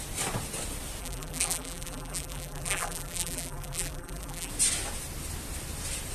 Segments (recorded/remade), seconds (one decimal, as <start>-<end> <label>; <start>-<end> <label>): 0.0-1.0 recorded; 1.0-4.5 remade; 4.5-6.1 recorded